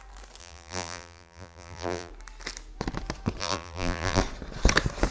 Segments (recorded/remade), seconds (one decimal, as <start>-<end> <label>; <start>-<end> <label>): 0.0-0.4 recorded; 0.4-2.1 remade; 2.1-3.4 recorded; 3.4-4.2 remade; 4.2-5.1 recorded

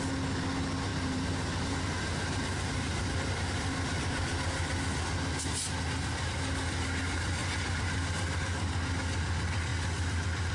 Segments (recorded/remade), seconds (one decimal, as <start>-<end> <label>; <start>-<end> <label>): 0.0-0.9 recorded; 0.9-3.5 remade; 3.5-7.4 recorded; 7.4-8.1 remade; 8.1-10.5 recorded